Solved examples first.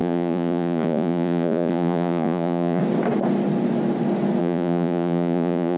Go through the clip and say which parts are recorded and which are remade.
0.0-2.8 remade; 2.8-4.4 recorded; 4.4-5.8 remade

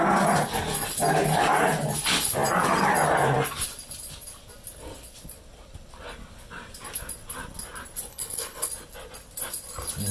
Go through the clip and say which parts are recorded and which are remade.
0.0-8.1 recorded; 8.1-8.7 remade; 8.7-10.1 recorded